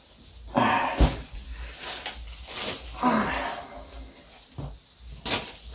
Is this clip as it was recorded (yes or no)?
yes